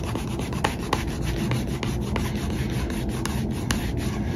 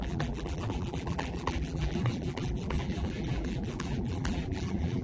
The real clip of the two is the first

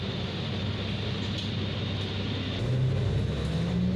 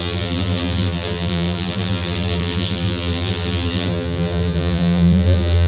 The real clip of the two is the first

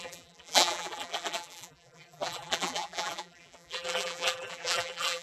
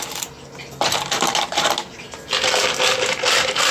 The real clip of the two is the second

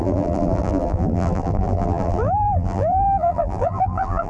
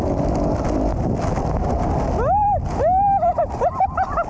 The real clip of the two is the second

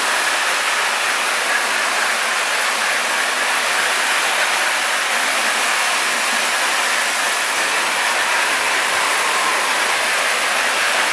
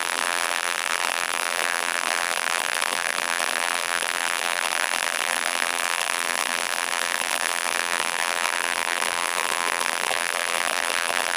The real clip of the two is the first